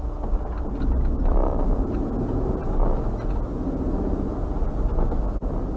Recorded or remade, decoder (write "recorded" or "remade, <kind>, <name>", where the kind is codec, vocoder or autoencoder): recorded